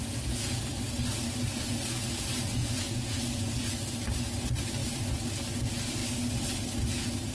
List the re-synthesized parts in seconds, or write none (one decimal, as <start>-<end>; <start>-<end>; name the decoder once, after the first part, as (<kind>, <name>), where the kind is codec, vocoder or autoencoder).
0.0-0.6 (vocoder, Vocos); 2.6-3.2